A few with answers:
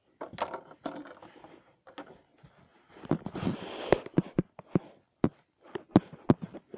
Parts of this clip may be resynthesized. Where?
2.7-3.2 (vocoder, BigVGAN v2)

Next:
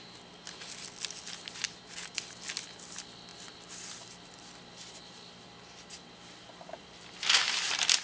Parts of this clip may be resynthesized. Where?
none